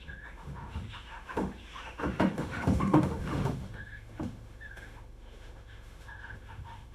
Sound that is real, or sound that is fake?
fake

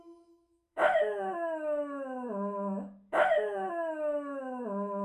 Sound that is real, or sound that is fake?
fake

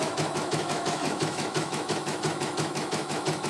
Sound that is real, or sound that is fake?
fake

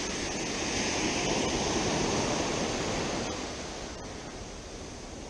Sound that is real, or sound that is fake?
real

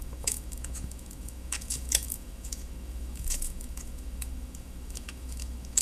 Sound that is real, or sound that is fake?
fake